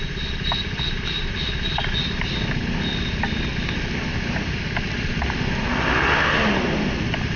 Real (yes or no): yes